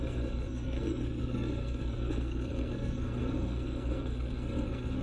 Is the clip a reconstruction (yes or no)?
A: yes